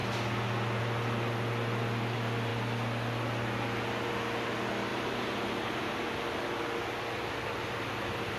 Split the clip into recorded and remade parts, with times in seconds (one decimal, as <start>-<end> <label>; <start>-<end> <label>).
0.0-4.9 recorded; 4.9-6.4 remade; 6.4-8.4 recorded